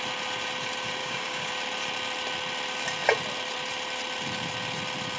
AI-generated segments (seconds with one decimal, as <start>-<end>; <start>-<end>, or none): 1.0-1.5